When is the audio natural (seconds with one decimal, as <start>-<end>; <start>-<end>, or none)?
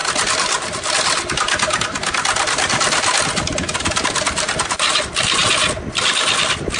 4.0-6.8